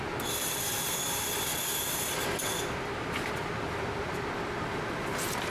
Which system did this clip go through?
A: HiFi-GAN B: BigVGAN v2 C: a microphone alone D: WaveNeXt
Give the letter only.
C